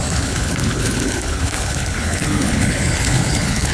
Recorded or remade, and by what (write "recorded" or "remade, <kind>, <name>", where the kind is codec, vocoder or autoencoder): remade, codec, HILCodec